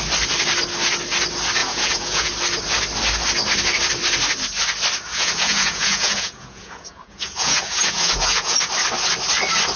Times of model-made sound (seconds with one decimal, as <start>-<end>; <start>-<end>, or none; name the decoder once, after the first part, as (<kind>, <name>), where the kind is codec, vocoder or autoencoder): 1.6-2.3 (vocoder, Vocos); 5.1-8.7